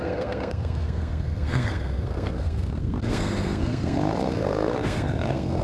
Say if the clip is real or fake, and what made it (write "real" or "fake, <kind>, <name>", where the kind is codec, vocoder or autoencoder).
fake, codec, SNAC